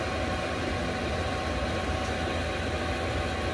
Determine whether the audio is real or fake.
real